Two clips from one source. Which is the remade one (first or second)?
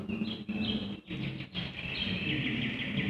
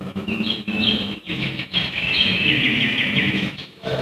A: second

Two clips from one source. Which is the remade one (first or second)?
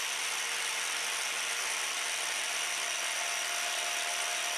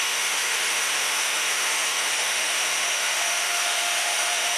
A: second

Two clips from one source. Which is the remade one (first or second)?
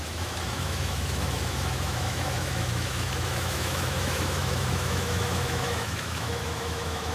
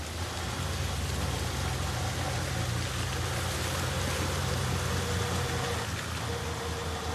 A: first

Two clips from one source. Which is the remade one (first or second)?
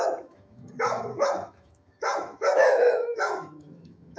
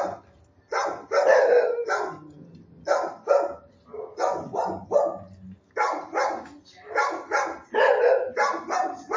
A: first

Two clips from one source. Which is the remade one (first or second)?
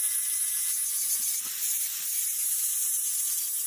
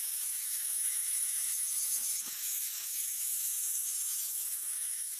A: second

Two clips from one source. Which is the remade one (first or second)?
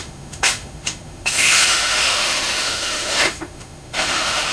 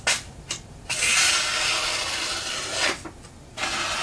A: first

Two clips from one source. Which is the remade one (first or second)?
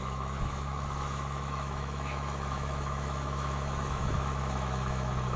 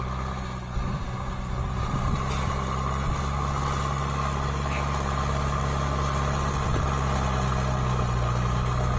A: first